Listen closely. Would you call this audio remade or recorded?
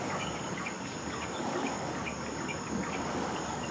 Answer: remade